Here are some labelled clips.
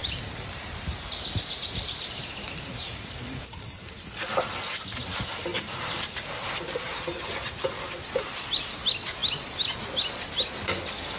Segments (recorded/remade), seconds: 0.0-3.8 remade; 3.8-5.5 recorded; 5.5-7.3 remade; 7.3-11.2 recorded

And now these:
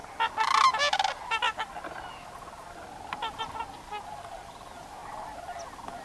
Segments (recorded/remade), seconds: 0.0-6.0 recorded

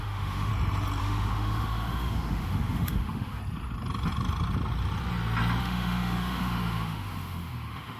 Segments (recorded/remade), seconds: 0.0-0.5 remade; 0.5-1.0 recorded; 1.0-3.4 remade; 3.4-5.6 recorded; 5.6-8.0 remade

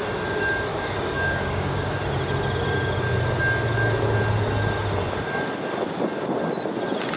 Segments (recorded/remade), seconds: 0.0-0.7 recorded; 0.7-2.0 remade; 2.0-7.2 recorded

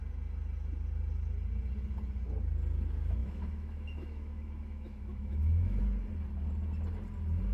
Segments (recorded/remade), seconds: 0.0-3.2 recorded; 3.2-5.8 remade; 5.8-7.5 recorded